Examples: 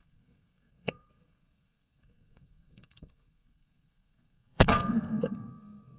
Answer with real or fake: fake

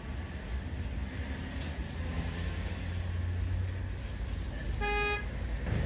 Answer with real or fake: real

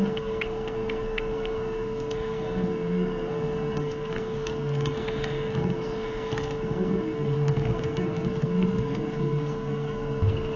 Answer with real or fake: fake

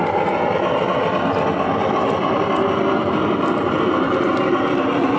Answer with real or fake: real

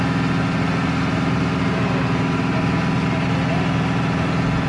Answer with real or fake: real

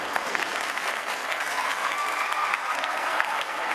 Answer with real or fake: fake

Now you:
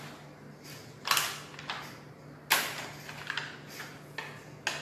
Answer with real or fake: real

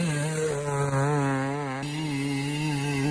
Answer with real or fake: real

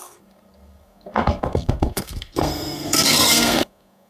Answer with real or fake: fake